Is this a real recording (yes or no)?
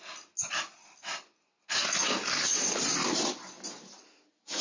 yes